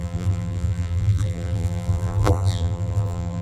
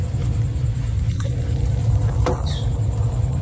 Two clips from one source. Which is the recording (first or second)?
second